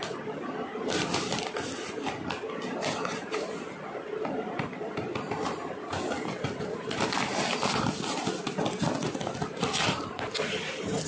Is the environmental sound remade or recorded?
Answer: recorded